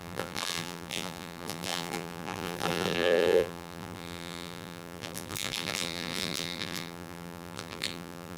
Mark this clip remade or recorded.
remade